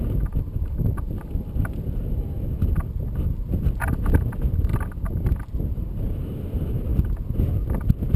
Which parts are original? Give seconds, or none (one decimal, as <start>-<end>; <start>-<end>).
0.0-8.2